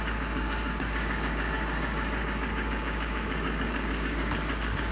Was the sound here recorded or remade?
remade